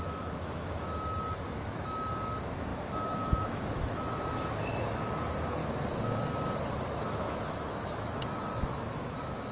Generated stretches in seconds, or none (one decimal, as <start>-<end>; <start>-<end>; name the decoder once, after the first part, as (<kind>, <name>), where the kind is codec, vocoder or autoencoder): 0.0-5.6 (autoencoder, DAC-VAE); 7.0-9.5